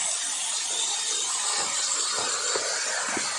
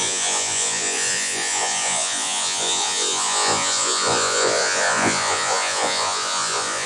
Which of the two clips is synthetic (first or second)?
second